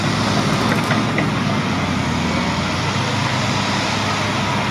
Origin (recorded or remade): recorded